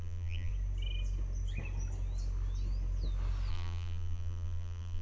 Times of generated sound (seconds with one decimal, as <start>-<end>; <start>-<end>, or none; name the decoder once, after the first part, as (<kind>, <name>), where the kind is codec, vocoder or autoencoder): 0.0-0.5 (vocoder, BigVGAN v2); 3.5-5.0